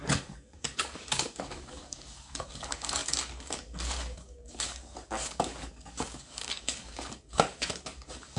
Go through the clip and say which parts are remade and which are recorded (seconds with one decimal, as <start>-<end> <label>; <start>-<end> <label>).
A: 0.0-8.4 remade